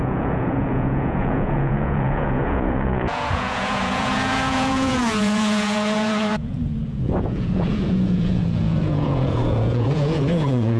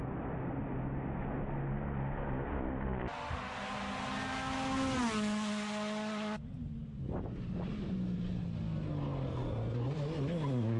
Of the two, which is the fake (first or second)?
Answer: first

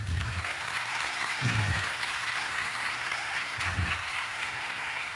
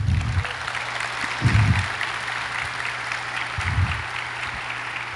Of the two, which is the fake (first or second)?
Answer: first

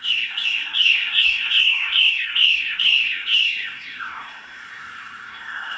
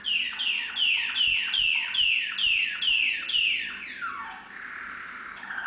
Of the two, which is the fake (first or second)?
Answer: first